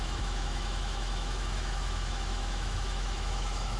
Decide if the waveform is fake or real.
fake